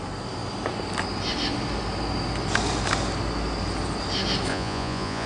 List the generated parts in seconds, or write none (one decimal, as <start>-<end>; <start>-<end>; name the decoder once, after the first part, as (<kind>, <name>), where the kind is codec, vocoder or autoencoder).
4.5-5.3 (vocoder, Vocos)